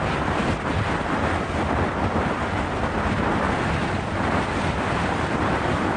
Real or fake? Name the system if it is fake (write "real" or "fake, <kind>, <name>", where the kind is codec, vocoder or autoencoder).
real